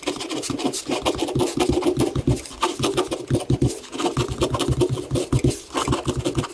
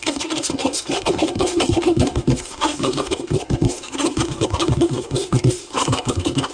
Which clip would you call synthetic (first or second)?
second